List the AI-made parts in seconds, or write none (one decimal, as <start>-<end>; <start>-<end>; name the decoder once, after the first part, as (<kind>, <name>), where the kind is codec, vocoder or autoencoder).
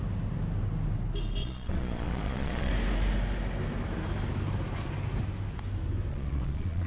1.4-2.7 (vocoder, Vocos); 6.1-6.9